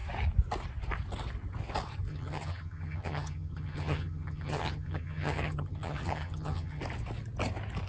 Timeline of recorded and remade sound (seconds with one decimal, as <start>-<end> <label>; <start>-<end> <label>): 0.0-2.1 recorded; 2.1-6.8 remade; 6.8-7.9 recorded